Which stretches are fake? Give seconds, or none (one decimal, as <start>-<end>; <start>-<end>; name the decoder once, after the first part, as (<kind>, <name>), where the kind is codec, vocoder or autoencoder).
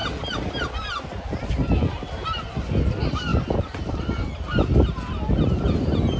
none